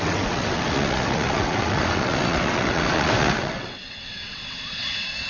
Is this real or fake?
fake